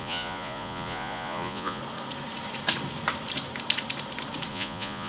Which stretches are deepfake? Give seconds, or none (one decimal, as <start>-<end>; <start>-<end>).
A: 0.0-1.8; 4.5-5.1